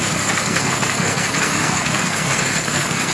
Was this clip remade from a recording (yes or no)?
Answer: yes